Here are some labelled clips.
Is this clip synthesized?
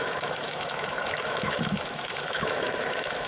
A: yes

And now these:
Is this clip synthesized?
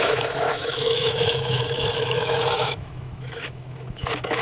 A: yes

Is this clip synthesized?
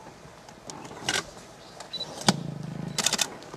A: no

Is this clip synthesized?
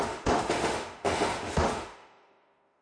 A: yes